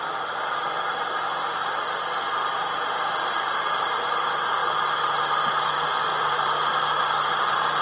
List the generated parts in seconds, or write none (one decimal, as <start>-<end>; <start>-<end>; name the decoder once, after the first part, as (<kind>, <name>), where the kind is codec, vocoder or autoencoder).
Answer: 6.1-6.8 (vocoder, BigVGAN v2)